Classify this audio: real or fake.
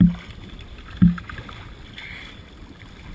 real